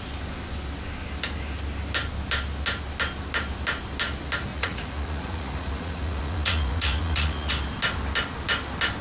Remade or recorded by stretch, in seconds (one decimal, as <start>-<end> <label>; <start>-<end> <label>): 0.0-4.5 recorded; 4.5-7.5 remade; 7.5-9.0 recorded